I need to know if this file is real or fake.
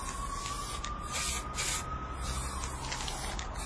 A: real